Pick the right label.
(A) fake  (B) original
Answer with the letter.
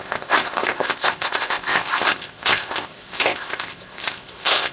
A